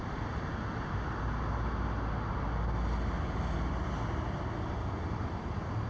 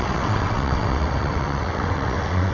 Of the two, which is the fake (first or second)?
second